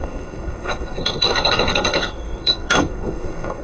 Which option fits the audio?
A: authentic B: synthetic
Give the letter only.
B